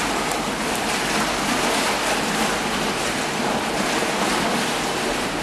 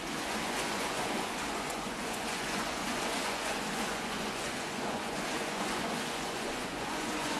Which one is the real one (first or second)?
first